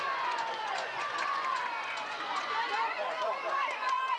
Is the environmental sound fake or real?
fake